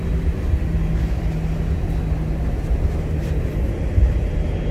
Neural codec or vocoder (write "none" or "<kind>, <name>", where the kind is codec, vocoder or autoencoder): none